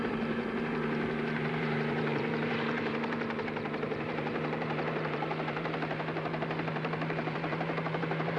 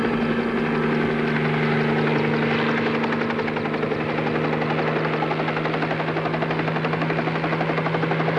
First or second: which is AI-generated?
first